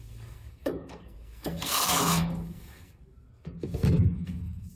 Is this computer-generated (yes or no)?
yes